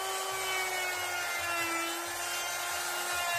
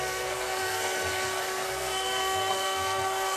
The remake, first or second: second